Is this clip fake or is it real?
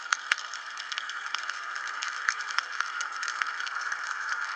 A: fake